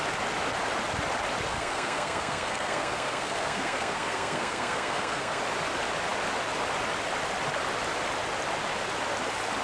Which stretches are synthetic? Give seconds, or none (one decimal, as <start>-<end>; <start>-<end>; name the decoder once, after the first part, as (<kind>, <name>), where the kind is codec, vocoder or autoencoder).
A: 1.5-5.4 (codec, SNAC)

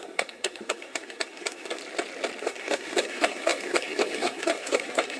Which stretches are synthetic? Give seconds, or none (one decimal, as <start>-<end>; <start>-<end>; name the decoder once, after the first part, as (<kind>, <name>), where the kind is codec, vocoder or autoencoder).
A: 0.0-1.8 (codec, SNAC); 2.4-5.2